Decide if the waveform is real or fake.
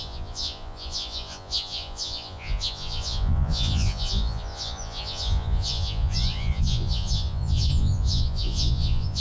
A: fake